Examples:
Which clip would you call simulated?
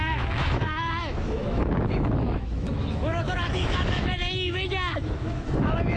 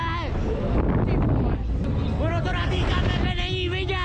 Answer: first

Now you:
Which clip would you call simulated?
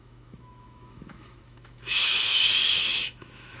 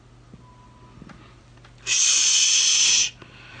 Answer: first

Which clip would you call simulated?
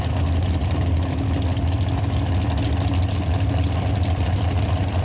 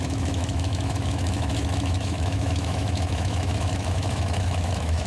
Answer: second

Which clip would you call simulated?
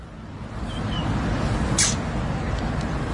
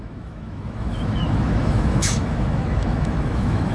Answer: second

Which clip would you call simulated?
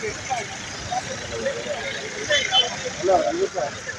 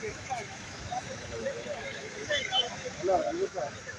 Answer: second